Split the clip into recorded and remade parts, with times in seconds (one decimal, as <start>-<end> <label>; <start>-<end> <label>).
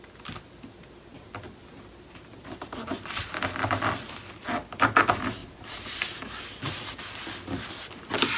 0.0-1.6 recorded; 1.6-3.2 remade; 3.2-5.4 recorded; 5.4-6.4 remade; 6.4-8.4 recorded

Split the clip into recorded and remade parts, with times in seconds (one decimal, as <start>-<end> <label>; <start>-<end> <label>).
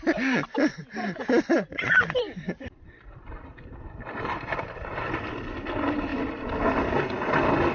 0.0-0.7 recorded; 0.7-5.3 remade; 5.3-7.7 recorded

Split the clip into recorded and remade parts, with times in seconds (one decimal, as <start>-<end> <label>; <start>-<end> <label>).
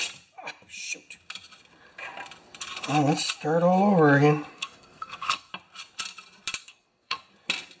0.0-4.5 recorded; 4.5-5.5 remade; 5.5-6.6 recorded; 6.6-7.3 remade; 7.3-7.8 recorded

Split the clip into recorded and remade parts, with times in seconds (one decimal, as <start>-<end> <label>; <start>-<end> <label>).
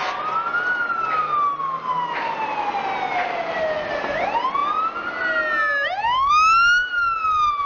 0.0-7.7 recorded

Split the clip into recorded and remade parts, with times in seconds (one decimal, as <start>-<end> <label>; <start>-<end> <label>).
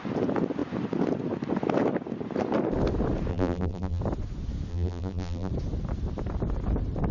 0.0-3.3 recorded; 3.3-4.0 remade; 4.0-4.7 recorded; 4.7-5.5 remade; 5.5-7.1 recorded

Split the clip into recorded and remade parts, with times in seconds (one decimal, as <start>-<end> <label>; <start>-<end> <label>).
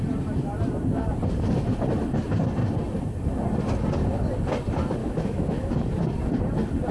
0.0-5.0 recorded; 5.0-5.7 remade; 5.7-6.9 recorded